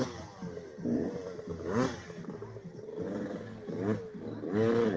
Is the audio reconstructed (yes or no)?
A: no